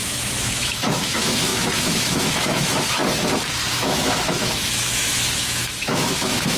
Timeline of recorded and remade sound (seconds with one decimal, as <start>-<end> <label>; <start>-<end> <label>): 0.0-3.0 remade; 3.0-3.7 recorded; 3.7-6.6 remade